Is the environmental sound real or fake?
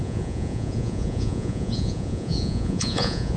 fake